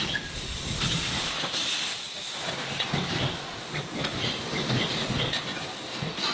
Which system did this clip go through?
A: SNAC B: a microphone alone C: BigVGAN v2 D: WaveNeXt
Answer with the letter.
B